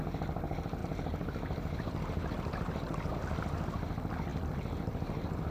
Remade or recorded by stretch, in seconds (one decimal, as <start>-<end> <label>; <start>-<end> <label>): 0.0-0.8 recorded; 0.8-3.1 remade; 3.1-5.5 recorded